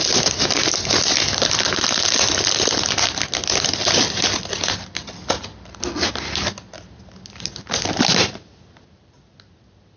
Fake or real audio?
real